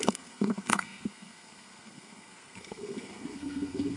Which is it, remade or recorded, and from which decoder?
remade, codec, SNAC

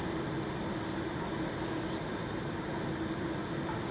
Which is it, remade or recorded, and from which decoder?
recorded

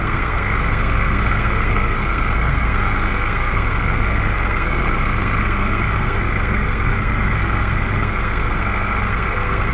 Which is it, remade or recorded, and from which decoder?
remade, codec, SNAC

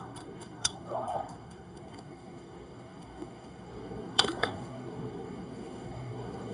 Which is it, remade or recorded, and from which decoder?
remade, codec, SNAC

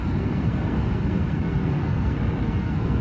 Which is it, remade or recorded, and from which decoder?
remade, codec, SNAC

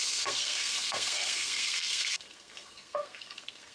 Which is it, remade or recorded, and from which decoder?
remade, codec, SNAC